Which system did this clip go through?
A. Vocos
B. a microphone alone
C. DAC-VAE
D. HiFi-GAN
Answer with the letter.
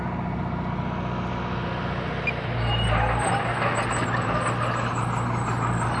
B